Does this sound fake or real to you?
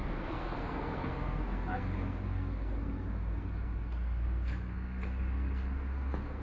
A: fake